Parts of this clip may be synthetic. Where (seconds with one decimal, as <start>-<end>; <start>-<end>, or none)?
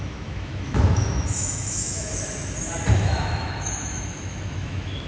0.0-2.1; 2.9-5.1